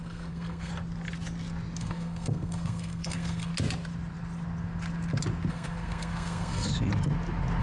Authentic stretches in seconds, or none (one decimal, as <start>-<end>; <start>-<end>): 0.7-1.8; 3.5-5.5; 6.7-7.6